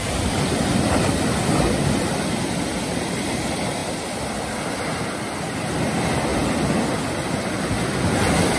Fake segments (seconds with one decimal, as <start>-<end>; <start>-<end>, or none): none